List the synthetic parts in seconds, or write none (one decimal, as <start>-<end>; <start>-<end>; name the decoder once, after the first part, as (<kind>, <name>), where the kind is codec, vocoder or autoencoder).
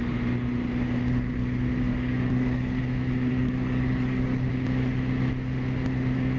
1.9-2.8 (codec, DAC); 3.3-4.5